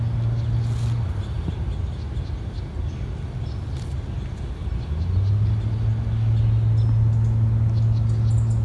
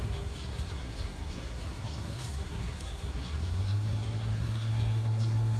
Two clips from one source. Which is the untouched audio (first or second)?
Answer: first